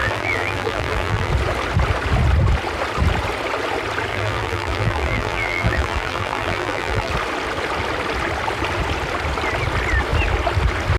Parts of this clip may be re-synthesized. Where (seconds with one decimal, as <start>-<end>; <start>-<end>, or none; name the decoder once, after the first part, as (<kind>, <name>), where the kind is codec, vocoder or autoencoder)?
0.0-1.3 (vocoder, BigVGAN v2); 4.1-7.1